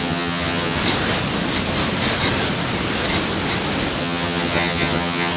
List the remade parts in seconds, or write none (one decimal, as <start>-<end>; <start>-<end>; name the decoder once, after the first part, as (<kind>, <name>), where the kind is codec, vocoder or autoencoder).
0.0-0.8 (vocoder, HiFi-GAN); 4.0-5.4